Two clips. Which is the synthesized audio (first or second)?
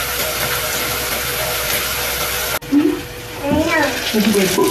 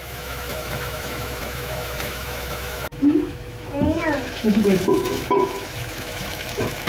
second